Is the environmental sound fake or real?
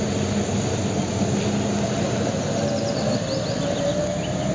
real